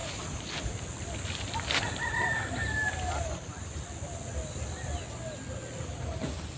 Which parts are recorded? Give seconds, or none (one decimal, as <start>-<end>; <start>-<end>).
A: 0.0-6.6